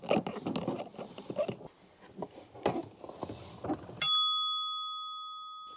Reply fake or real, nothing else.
real